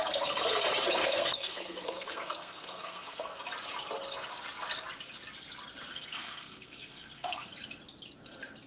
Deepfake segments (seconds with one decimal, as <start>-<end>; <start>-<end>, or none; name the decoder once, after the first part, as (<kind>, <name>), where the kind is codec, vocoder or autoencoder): 1.0-3.4 (codec, SNAC); 5.9-7.5